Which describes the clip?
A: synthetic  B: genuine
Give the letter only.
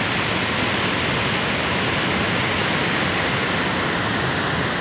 B